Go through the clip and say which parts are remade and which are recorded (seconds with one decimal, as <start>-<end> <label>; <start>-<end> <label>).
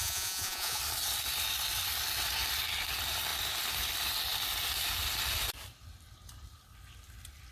0.0-0.8 remade; 0.8-7.5 recorded